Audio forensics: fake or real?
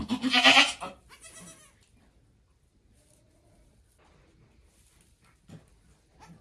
real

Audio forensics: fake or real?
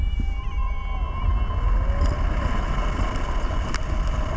real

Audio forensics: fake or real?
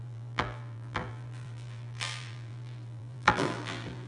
fake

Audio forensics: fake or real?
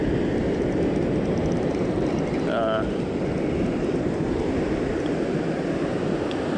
real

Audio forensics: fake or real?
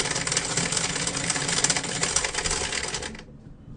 real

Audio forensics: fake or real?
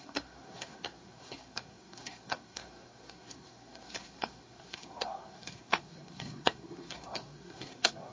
fake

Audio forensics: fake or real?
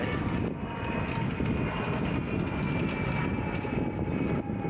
real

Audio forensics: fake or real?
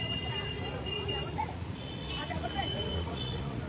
fake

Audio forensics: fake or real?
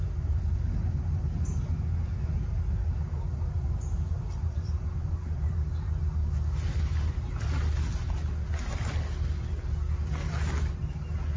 real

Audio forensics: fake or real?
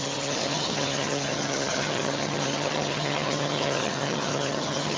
fake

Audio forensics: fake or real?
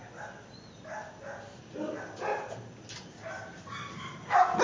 real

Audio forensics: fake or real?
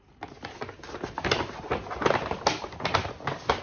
real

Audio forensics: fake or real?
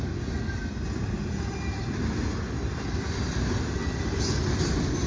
real